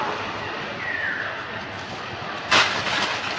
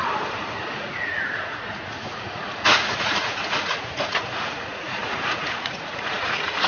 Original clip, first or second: first